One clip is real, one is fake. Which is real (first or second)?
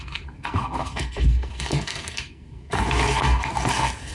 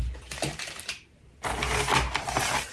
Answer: second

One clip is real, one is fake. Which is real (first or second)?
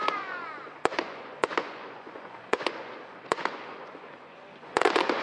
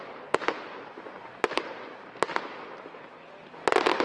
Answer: second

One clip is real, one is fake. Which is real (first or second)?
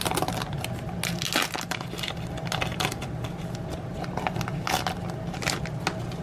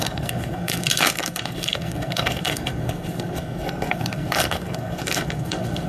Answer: first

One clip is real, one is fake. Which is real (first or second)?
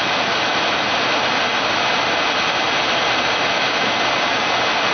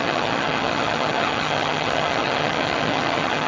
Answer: first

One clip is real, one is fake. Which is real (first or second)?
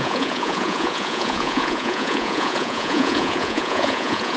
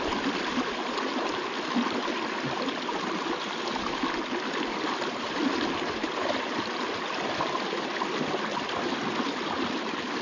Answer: second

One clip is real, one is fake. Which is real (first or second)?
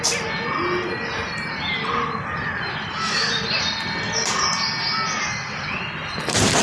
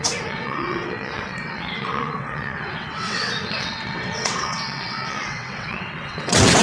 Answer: first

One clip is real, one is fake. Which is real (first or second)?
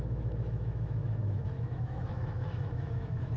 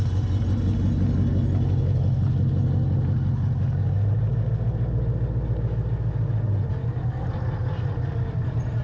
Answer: second